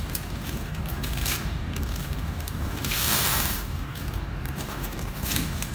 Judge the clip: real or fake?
fake